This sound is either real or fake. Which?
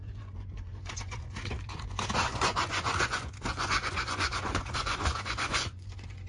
fake